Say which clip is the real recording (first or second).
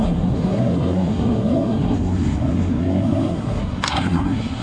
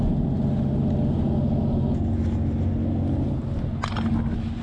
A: second